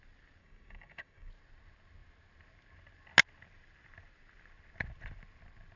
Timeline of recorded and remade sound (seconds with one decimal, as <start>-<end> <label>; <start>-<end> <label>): 0.0-0.4 recorded; 0.4-1.3 remade; 1.3-5.8 recorded

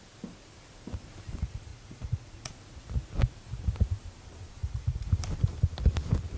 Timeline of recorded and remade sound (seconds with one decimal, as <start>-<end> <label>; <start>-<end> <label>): 0.0-1.7 recorded; 1.7-2.5 remade; 2.5-4.6 recorded; 4.6-5.2 remade; 5.2-6.4 recorded

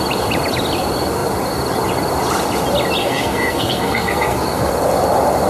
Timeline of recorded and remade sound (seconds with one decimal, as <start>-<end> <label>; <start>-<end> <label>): 0.0-3.0 recorded; 3.0-4.7 remade; 4.7-5.5 recorded

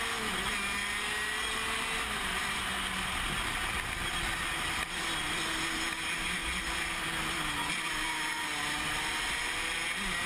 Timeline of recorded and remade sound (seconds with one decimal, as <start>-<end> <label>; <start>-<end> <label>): 0.0-6.4 recorded; 6.4-7.0 remade; 7.0-10.3 recorded

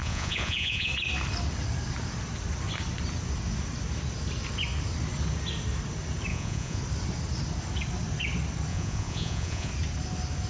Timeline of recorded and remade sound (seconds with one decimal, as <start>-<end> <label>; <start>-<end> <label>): 0.0-0.9 remade; 0.9-6.3 recorded; 6.3-6.8 remade; 6.8-8.7 recorded; 8.7-9.7 remade; 9.7-10.5 recorded

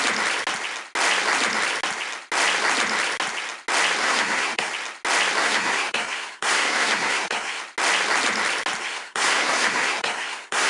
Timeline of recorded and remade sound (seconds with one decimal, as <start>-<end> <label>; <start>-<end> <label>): 0.0-4.0 recorded; 4.0-4.7 remade; 4.7-5.4 recorded; 5.4-7.6 remade; 7.6-8.8 recorded; 8.8-10.7 remade

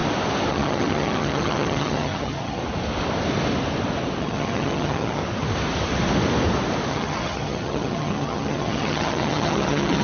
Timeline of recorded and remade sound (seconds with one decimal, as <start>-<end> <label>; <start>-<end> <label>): 0.0-0.5 recorded; 0.5-2.6 remade; 2.6-4.2 recorded; 4.2-5.2 remade; 5.2-6.9 recorded; 6.9-10.0 remade